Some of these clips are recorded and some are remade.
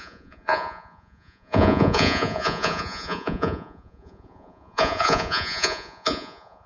remade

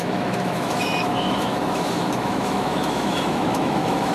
remade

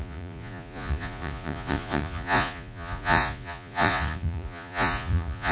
remade